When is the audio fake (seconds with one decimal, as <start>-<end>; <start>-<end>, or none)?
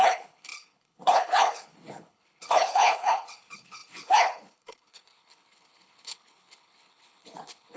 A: 0.0-7.8